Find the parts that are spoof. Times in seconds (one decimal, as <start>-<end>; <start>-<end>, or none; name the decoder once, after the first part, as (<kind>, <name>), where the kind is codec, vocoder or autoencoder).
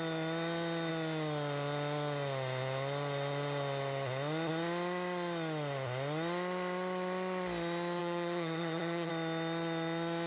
8.0-9.1 (vocoder, HiFi-GAN)